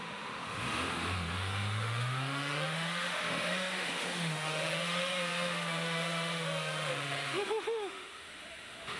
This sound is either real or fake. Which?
fake